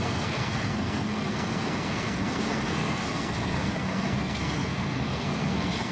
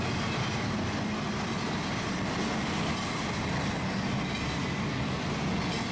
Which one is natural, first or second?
second